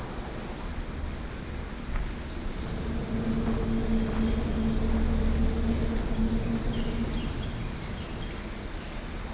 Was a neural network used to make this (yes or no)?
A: no